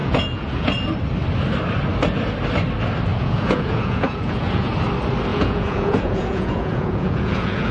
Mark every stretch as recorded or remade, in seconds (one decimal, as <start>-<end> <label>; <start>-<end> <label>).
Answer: 0.0-0.7 remade; 0.7-3.1 recorded; 3.1-4.7 remade; 4.7-5.3 recorded; 5.3-7.7 remade